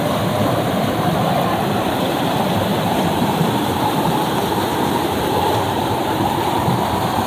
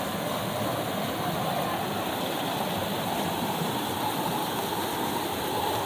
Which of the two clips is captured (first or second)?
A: second